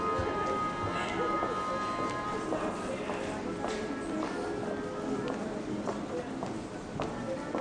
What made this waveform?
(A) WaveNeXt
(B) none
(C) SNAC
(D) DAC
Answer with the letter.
B